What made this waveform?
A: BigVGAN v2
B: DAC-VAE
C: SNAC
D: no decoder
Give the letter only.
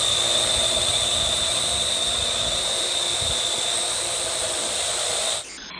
D